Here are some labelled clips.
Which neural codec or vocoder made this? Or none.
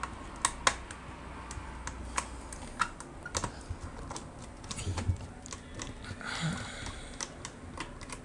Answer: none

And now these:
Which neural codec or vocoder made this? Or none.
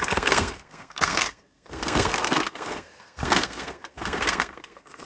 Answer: codec, SNAC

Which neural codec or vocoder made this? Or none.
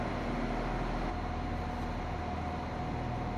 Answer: none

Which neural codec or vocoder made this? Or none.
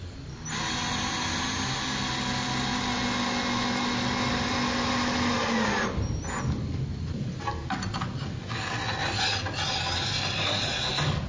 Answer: none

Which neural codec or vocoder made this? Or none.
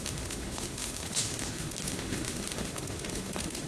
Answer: autoencoder, DAC-VAE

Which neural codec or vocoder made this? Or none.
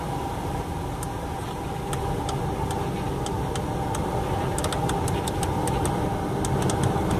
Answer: none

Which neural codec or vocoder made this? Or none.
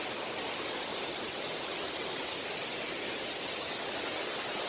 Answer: none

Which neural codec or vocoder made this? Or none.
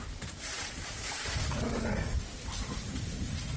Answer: vocoder, BigVGAN v2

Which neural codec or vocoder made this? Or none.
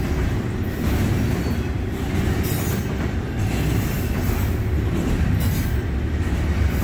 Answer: none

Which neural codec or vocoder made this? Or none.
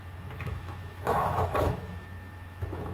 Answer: autoencoder, DAC-VAE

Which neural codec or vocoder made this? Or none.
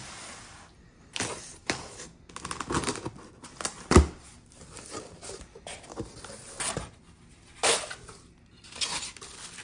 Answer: none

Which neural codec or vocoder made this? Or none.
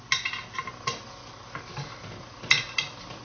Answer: none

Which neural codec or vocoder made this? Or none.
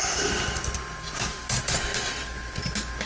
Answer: none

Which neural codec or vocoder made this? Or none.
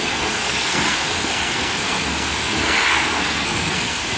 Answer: codec, SNAC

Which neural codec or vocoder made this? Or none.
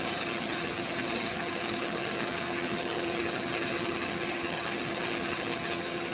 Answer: vocoder, HiFi-GAN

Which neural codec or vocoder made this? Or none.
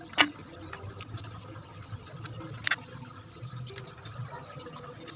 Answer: none